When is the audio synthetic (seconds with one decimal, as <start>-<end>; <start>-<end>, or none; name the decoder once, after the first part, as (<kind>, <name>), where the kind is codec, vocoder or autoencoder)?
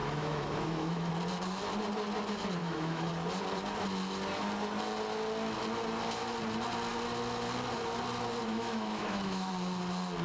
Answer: 0.0-1.1 (autoencoder, DAC-VAE); 2.6-3.1; 8.4-9.5